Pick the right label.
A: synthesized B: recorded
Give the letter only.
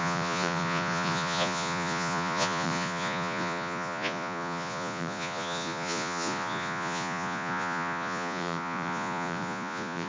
A